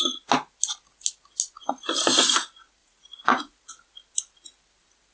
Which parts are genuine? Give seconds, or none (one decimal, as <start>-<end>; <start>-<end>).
0.0-2.8; 3.7-5.1